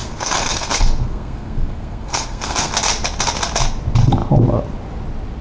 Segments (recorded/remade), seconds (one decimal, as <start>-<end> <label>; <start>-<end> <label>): 0.0-2.7 remade; 2.7-5.4 recorded